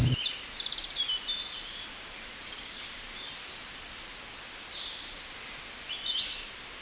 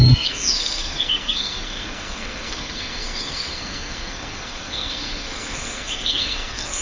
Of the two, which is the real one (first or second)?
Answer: first